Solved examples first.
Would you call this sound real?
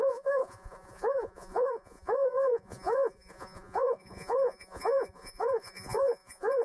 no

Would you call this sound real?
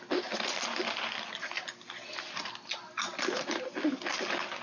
yes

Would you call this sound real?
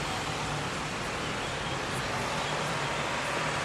yes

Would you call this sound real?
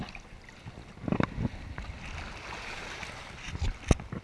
yes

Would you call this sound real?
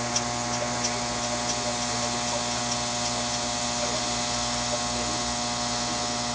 yes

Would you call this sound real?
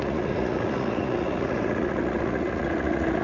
no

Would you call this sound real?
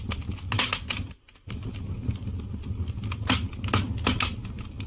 yes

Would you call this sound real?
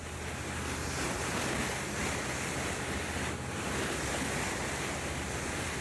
yes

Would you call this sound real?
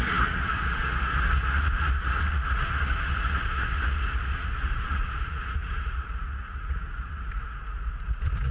no